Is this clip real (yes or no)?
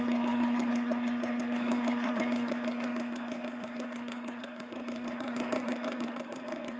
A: no